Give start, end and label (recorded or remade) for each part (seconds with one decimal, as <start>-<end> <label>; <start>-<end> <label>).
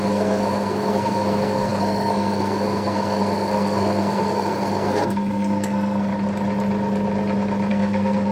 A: 0.0-6.1 remade; 6.1-7.7 recorded; 7.7-8.3 remade